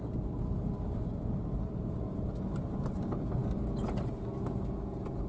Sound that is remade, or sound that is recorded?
recorded